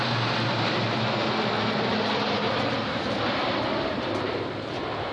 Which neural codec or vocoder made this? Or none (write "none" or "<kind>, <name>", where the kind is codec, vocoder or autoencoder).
none